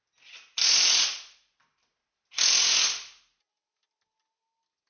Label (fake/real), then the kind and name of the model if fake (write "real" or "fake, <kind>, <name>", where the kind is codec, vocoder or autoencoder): real